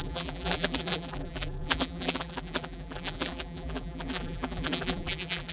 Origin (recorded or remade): remade